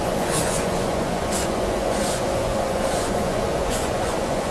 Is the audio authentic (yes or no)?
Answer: no